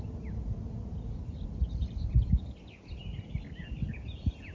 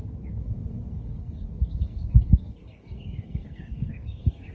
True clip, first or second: first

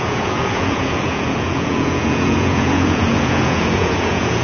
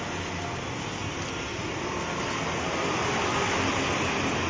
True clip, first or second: second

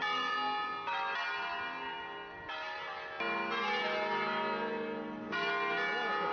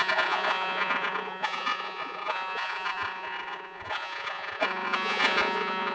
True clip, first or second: first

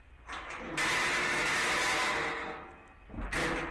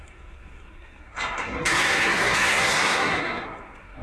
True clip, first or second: first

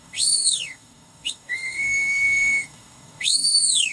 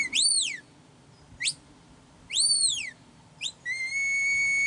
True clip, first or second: second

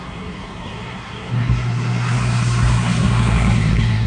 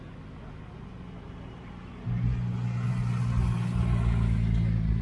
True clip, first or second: second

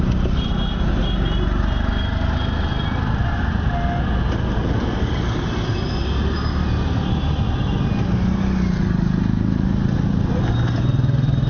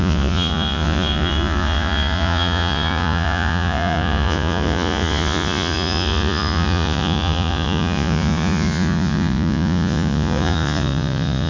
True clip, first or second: first